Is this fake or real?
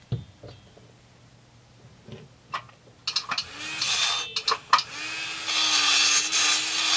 real